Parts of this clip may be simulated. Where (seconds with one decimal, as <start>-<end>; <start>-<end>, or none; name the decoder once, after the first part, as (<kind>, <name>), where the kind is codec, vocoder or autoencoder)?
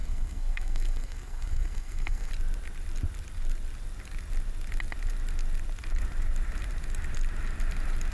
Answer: 0.0-2.3 (codec, SNAC)